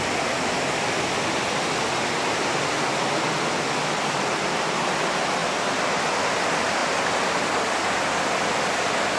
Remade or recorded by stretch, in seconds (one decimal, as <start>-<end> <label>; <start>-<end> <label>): 0.0-9.2 recorded